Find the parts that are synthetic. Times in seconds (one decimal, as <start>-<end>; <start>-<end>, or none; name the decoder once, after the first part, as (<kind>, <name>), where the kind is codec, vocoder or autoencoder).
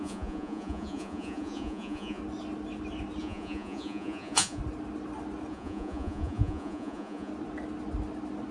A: 0.0-2.2 (vocoder, Vocos); 3.2-4.6; 5.5-7.3